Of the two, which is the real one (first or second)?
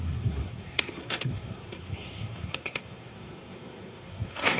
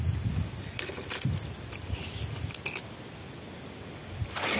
second